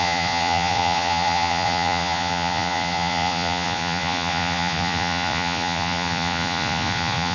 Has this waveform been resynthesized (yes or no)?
yes